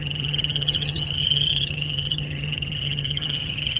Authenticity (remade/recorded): remade